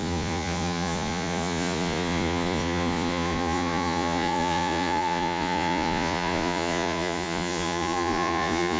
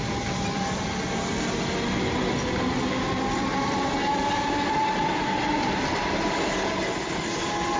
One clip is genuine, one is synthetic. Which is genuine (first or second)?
second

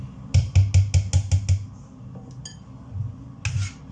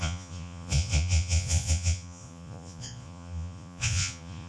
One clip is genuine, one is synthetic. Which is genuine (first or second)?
first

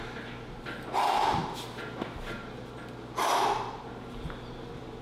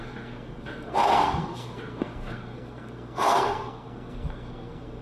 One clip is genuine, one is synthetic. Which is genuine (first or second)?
first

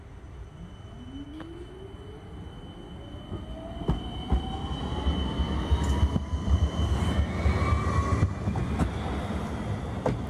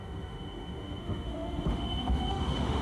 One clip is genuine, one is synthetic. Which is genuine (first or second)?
first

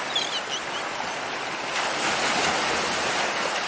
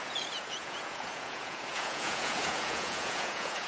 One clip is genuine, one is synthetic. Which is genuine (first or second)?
first